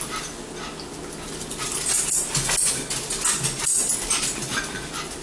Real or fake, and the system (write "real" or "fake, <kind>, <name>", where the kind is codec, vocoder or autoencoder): real